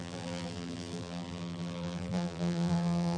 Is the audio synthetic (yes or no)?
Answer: yes